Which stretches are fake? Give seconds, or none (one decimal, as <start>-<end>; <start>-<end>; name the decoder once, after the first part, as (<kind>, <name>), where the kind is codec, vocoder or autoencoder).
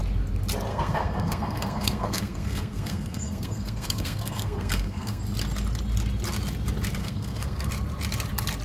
0.7-5.2 (codec, SNAC); 7.0-7.7